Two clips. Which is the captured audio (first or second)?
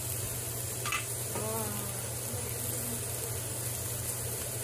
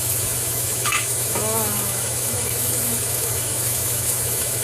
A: first